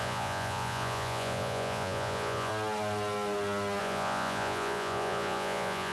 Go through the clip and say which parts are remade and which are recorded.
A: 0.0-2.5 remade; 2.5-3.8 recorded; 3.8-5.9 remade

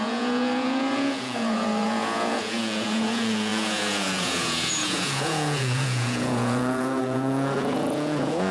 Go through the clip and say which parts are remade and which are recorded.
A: 0.0-8.5 remade

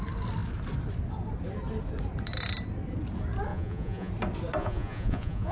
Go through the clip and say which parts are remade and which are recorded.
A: 0.0-3.5 recorded; 3.5-4.1 remade; 4.1-4.6 recorded; 4.6-5.5 remade

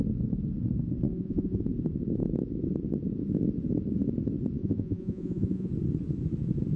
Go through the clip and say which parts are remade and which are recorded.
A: 0.0-1.1 recorded; 1.1-1.6 remade; 1.6-4.6 recorded; 4.6-5.7 remade; 5.7-6.8 recorded